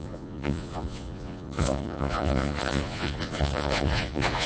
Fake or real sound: fake